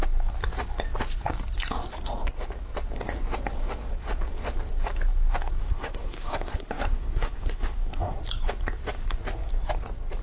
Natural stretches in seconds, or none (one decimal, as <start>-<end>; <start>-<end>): 0.0-5.6; 8.2-10.2